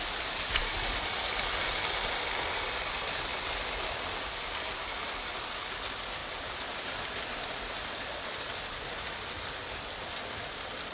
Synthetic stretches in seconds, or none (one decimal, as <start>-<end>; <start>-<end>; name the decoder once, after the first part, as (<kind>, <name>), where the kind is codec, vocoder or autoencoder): 0.0-3.3 (vocoder, BigVGAN v2); 3.9-10.9